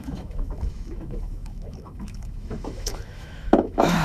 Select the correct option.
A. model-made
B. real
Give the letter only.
A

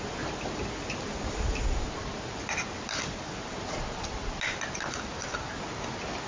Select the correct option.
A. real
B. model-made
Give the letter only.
A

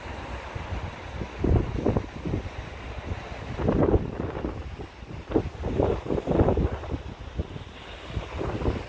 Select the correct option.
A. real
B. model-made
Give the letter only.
A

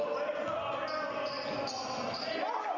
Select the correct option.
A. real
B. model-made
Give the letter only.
A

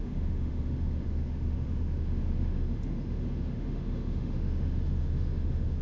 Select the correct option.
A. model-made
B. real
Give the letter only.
A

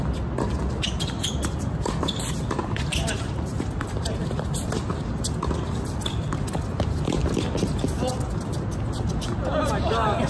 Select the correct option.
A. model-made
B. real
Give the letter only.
B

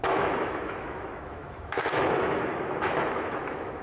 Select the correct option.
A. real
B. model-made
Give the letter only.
B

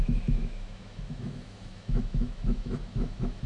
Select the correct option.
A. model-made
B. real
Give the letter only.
A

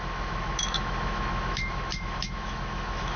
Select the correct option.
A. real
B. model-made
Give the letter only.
B